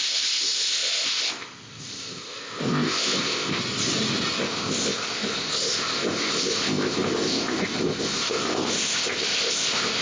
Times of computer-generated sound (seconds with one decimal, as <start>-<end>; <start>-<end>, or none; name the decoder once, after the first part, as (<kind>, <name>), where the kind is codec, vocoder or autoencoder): 0.0-3.6 (codec, ZipCodec); 4.4-10.0